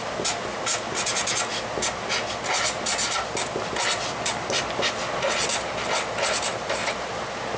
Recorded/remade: recorded